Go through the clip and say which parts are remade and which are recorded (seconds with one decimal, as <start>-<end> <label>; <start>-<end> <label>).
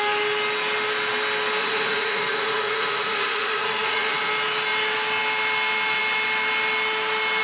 0.0-1.6 recorded; 1.6-4.3 remade; 4.3-7.4 recorded